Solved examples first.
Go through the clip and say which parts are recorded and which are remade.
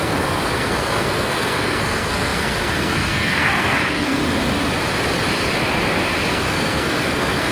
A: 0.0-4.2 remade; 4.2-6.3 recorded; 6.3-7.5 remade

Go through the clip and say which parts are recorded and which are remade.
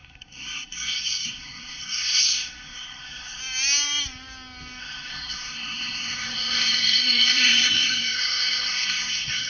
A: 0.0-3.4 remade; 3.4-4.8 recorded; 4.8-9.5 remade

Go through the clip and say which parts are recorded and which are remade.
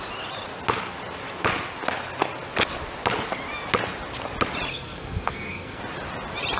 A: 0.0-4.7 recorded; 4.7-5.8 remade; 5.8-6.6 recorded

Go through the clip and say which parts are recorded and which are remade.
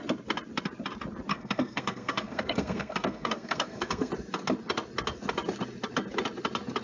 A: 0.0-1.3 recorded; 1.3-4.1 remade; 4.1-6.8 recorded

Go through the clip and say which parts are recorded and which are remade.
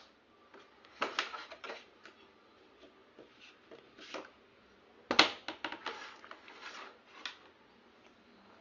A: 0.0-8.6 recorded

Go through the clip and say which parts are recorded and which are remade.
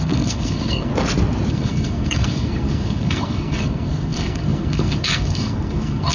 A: 0.0-0.9 remade; 0.9-1.5 recorded; 1.5-6.1 remade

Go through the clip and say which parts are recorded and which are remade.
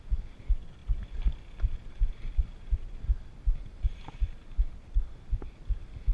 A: 0.0-6.1 recorded